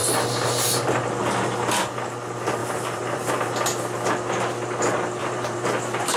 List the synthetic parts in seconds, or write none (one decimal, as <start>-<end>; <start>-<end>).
2.6-3.3; 5.2-6.2